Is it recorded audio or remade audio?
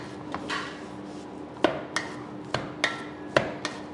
recorded